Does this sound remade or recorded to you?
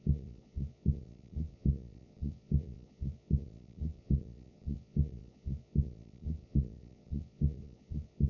remade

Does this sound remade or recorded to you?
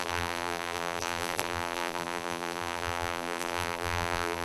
remade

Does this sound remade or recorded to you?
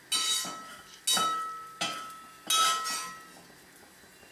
recorded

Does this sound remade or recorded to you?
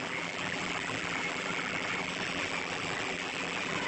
remade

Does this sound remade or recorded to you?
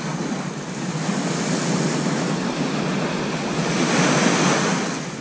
recorded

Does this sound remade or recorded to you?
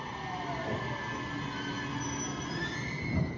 recorded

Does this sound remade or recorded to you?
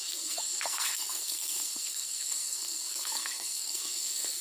remade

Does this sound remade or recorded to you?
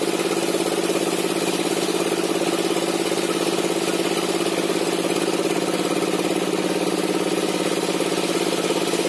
recorded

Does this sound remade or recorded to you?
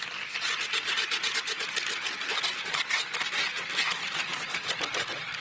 recorded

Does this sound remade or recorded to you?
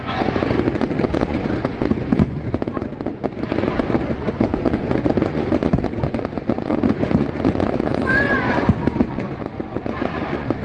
remade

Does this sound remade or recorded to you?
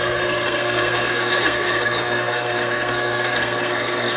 remade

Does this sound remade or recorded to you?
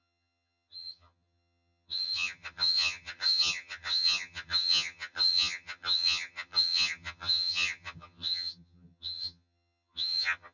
remade